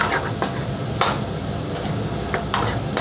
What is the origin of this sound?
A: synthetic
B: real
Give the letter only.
B